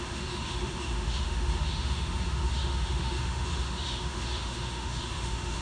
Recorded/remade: remade